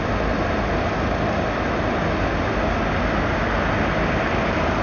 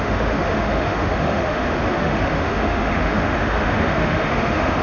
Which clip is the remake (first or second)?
second